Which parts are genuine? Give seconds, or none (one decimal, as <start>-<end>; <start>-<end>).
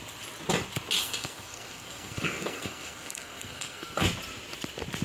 0.0-1.0; 4.0-5.0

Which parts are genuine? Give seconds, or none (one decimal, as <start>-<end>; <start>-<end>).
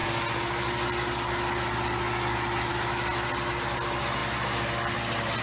0.0-5.4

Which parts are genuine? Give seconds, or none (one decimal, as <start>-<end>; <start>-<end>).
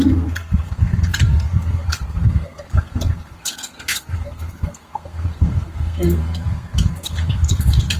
none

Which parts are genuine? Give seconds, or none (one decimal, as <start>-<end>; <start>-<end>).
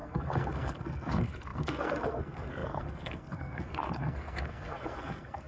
none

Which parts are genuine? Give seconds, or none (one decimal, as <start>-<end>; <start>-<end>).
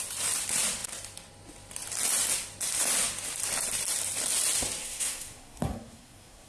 0.0-4.8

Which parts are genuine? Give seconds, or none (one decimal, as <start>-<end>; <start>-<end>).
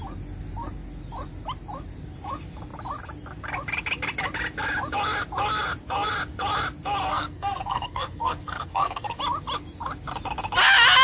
0.0-7.1; 9.2-11.0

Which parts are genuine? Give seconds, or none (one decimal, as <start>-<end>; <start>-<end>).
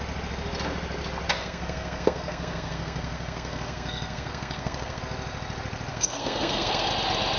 0.0-1.4; 5.0-5.9; 6.9-7.4